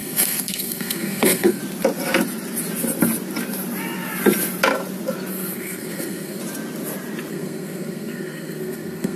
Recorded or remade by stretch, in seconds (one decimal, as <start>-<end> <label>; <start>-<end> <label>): 0.0-1.6 remade; 1.6-5.3 recorded; 5.3-6.4 remade; 6.4-7.3 recorded; 7.3-9.2 remade